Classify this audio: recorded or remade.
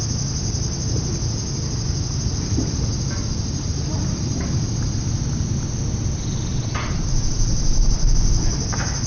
recorded